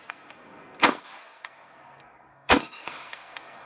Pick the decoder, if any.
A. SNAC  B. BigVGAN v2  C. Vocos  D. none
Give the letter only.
A